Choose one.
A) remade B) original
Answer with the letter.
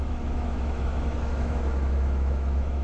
A